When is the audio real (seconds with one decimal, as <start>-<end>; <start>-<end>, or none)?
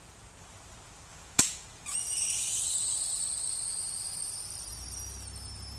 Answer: 0.0-1.1; 2.0-5.8